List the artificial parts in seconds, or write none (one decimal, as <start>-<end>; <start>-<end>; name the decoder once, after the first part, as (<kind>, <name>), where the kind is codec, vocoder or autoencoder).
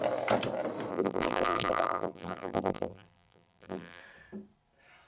0.9-4.0 (vocoder, BigVGAN v2)